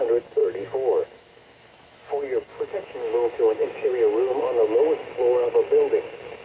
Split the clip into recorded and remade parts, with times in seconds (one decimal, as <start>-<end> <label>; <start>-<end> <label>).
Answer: 0.0-0.4 recorded; 0.4-2.1 remade; 2.1-2.5 recorded; 2.5-4.4 remade; 4.4-6.4 recorded